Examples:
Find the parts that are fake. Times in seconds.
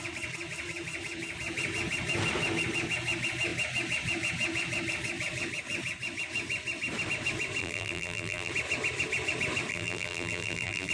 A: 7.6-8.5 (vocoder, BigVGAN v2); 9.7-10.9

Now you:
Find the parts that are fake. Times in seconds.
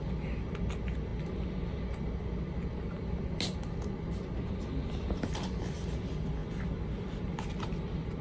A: none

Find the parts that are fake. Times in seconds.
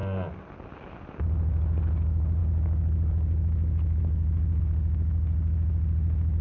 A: none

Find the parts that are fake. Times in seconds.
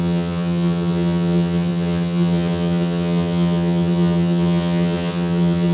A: 0.0-5.7 (vocoder, HiFi-GAN)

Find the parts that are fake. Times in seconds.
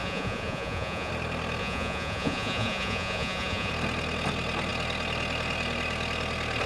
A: 0.0-1.1 (vocoder, Vocos); 1.6-3.7